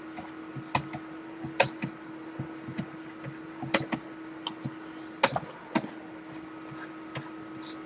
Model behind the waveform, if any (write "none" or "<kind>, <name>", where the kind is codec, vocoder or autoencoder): none